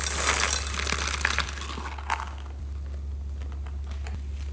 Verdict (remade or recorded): recorded